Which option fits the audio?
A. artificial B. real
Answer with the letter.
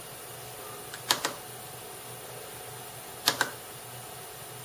B